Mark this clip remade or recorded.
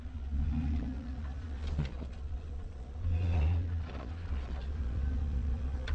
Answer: remade